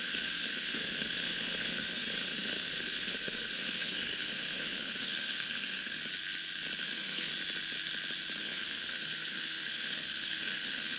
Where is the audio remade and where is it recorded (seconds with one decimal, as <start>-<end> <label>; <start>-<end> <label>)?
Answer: 0.0-6.0 remade; 6.0-6.8 recorded; 6.8-7.3 remade; 7.3-8.4 recorded; 8.4-11.0 remade